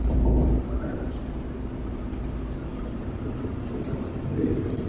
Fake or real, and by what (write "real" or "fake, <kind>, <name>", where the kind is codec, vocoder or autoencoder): fake, vocoder, BigVGAN v2